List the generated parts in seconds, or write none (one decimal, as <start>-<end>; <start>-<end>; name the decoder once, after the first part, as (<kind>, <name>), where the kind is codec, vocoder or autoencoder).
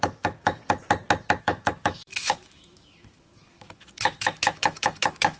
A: 0.0-0.6 (autoencoder, DAC-VAE); 1.4-5.4